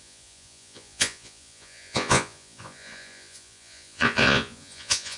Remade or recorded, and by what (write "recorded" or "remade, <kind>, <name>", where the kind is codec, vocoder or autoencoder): remade, vocoder, Vocos